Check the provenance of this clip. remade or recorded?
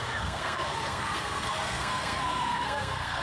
remade